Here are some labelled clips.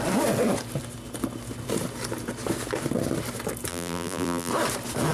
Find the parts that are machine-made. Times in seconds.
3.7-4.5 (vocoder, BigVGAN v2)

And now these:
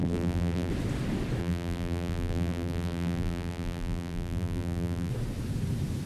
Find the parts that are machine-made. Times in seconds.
0.0-0.7 (vocoder, BigVGAN v2); 1.4-5.1

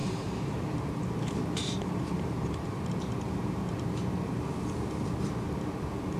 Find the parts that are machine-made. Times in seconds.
0.0-0.9 (vocoder, BigVGAN v2); 1.6-3.9

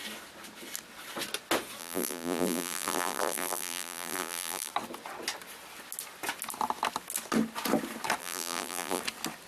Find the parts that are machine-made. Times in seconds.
1.8-4.7 (vocoder, BigVGAN v2); 8.2-9.0

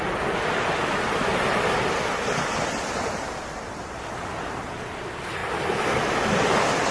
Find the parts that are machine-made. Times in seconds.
0.8-4.0 (vocoder, BigVGAN v2); 5.4-6.5

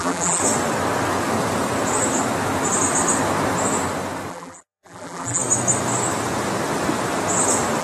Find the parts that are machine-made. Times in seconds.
0.0-0.4 (vocoder, BigVGAN v2); 4.3-5.4